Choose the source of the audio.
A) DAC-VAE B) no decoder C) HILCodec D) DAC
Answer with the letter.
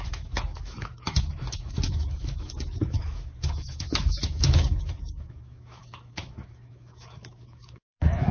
A